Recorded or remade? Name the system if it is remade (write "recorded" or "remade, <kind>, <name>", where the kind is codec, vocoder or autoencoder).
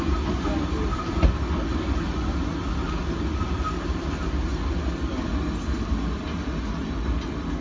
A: recorded